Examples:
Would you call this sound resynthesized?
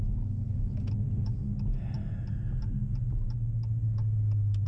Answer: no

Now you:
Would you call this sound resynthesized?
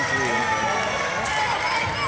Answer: no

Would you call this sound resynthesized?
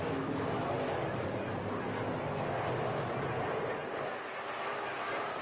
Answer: no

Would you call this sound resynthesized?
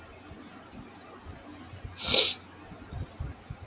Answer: no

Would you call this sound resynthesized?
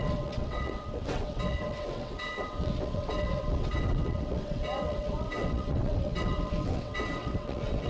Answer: yes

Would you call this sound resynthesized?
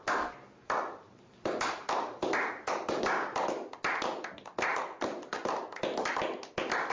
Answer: no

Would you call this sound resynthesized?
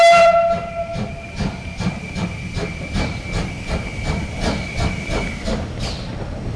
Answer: no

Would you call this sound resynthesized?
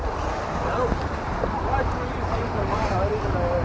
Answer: no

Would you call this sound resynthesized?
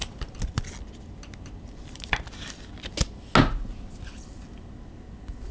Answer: no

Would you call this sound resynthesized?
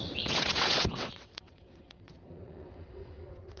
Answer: yes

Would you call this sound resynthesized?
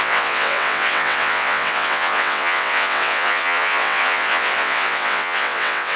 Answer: yes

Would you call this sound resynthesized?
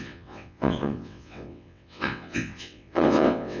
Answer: yes